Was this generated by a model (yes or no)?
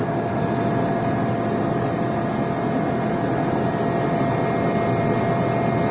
no